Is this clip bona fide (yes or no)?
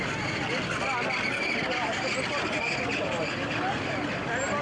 yes